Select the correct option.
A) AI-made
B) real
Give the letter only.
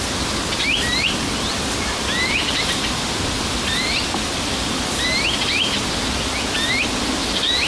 B